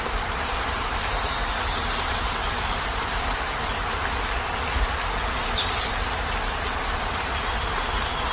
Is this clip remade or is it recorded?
recorded